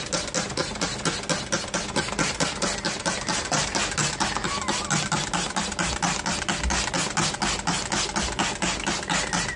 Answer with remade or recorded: recorded